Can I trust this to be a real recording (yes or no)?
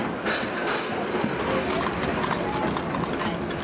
yes